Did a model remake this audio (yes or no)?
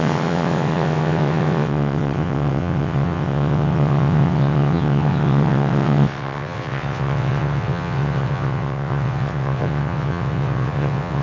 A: yes